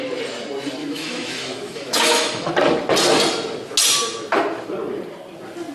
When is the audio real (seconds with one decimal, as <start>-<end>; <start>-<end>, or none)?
0.0-0.8; 2.5-5.7